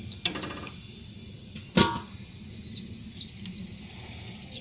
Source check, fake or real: real